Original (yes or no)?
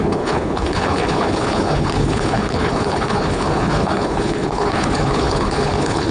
no